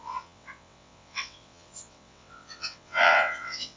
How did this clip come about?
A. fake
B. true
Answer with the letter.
A